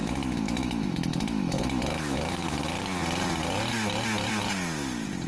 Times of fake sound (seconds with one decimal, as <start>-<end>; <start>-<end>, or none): 0.0-2.5